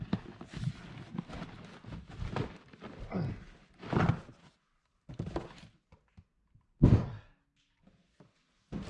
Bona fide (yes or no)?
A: yes